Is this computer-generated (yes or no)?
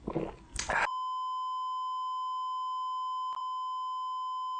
no